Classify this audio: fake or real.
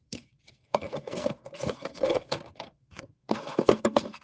fake